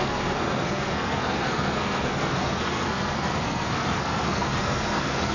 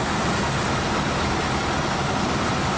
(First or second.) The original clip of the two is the second